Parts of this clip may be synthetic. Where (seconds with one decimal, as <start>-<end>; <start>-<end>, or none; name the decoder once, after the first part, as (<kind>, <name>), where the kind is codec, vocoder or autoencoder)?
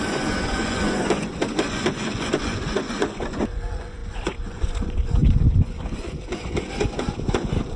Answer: 0.0-7.8 (vocoder, Vocos)